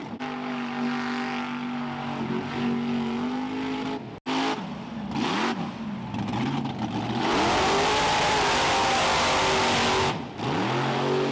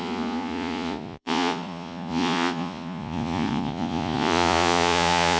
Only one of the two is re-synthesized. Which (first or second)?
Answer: second